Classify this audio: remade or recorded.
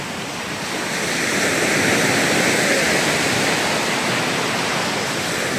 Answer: recorded